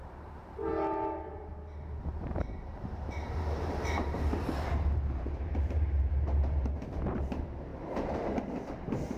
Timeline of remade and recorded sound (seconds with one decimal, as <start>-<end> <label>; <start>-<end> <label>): 0.0-0.7 remade; 0.7-2.0 recorded; 2.0-9.2 remade